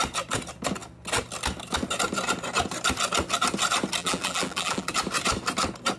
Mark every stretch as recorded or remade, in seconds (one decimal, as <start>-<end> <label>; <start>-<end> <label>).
0.0-4.0 recorded; 4.0-4.9 remade; 4.9-6.0 recorded